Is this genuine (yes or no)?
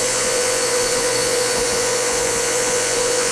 no